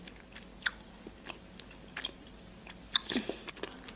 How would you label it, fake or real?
real